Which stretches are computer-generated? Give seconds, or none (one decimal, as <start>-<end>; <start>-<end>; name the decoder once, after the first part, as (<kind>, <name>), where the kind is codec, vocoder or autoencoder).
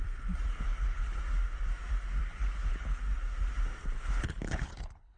0.5-1.2 (codec, HILCodec); 2.2-3.0; 3.8-5.2